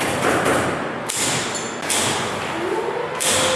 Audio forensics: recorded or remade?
recorded